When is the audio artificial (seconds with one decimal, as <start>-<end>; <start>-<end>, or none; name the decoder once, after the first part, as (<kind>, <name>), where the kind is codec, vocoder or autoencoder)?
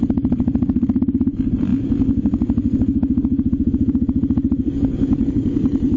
none